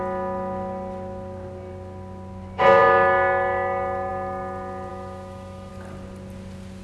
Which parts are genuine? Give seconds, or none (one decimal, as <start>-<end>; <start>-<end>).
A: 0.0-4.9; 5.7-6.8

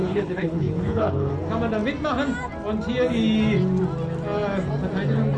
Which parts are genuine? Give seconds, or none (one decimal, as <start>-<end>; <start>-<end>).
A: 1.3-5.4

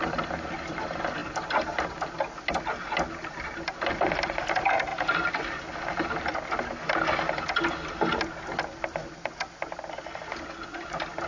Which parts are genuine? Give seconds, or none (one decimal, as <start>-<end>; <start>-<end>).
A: 0.0-11.3

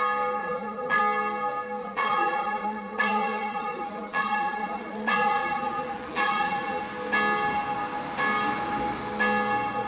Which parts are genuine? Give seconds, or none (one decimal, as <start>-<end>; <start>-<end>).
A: 0.0-0.4; 1.0-1.8; 6.8-9.9

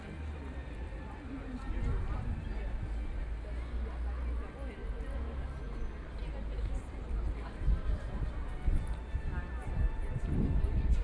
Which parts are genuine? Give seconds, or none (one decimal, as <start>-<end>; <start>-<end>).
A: 0.0-11.0